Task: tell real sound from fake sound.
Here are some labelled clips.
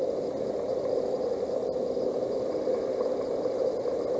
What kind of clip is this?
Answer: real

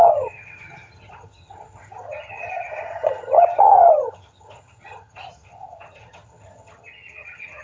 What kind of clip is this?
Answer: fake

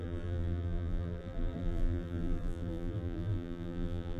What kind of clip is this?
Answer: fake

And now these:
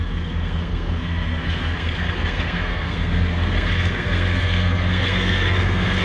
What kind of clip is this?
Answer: fake